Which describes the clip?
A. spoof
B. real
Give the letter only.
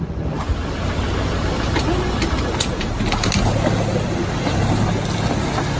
B